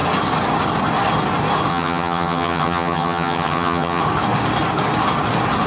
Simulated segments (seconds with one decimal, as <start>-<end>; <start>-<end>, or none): 1.7-4.0